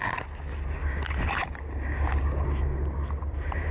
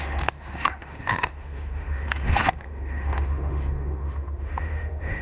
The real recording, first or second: first